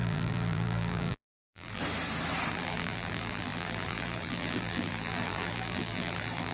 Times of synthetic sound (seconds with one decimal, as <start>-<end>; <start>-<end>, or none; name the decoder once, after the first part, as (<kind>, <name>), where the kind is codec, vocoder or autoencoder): 0.0-1.8 (vocoder, BigVGAN v2); 2.5-6.5